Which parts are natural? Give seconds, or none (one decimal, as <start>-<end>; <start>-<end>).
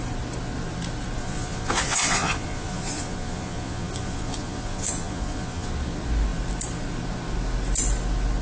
0.0-1.2; 5.7-8.4